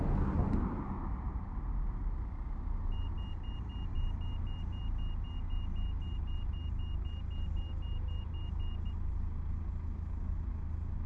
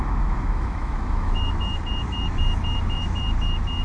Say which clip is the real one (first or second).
first